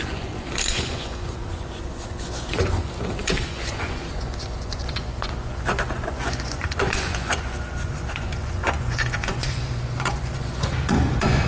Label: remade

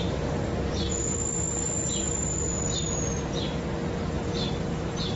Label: recorded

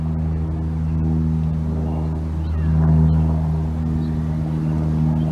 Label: recorded